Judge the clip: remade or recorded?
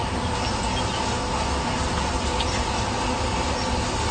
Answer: recorded